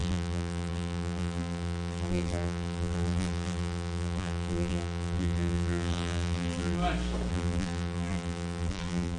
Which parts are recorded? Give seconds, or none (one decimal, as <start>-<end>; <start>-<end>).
6.8-7.3